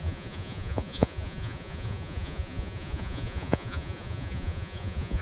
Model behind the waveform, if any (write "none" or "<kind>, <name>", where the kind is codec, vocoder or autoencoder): vocoder, Vocos